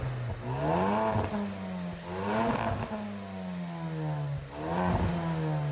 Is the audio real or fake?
real